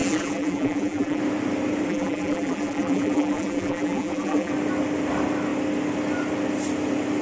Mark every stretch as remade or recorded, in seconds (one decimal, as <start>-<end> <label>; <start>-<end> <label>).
0.0-1.2 remade; 1.2-1.9 recorded; 1.9-4.5 remade; 4.5-7.2 recorded